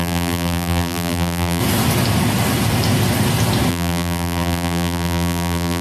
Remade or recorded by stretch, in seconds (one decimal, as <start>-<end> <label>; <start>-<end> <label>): 0.0-1.6 remade; 1.6-3.7 recorded; 3.7-5.8 remade